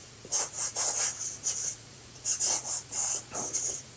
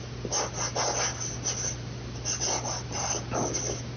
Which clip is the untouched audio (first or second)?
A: second